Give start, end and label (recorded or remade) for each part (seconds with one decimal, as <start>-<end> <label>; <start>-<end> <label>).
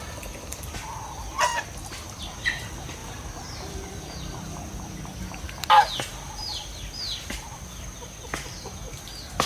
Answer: 0.0-9.5 recorded